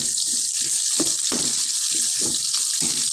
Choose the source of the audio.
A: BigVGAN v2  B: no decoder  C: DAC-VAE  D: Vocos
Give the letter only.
B